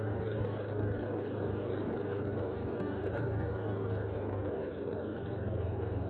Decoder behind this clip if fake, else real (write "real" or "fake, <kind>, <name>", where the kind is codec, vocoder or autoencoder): fake, codec, DAC